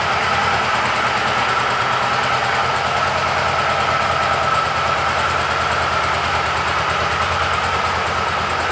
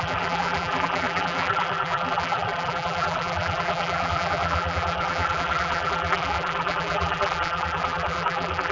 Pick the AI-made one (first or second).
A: second